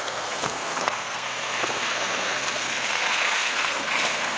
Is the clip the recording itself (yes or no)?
no